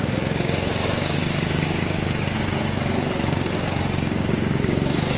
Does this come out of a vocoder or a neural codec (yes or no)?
yes